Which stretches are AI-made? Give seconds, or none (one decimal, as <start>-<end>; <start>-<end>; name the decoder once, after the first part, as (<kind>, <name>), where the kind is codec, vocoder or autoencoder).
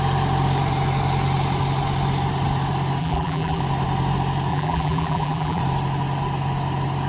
3.0-3.6 (vocoder, BigVGAN v2); 4.5-5.6